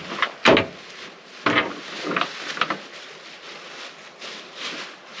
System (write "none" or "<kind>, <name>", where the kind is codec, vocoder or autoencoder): none